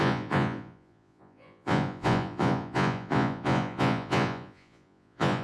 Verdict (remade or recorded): remade